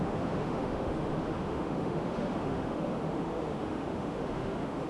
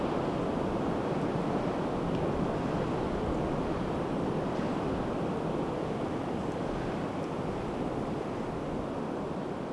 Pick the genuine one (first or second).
second